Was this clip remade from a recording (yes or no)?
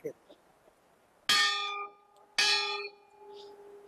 no